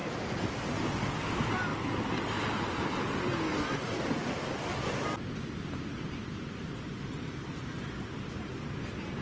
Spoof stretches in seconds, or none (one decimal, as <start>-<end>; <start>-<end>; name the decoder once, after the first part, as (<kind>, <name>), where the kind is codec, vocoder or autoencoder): 0.0-0.6 (vocoder, BigVGAN v2); 3.5-7.7